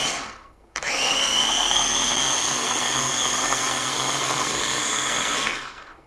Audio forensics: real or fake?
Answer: fake